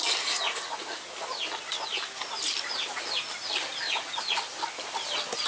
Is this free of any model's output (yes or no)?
yes